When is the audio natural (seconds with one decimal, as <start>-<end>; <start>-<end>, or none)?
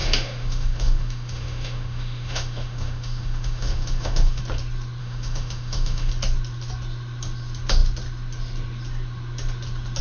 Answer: 4.4-5.0; 6.1-10.0